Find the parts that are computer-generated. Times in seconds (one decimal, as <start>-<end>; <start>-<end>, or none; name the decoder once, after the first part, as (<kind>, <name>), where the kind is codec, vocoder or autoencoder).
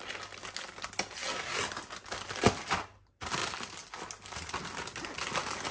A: none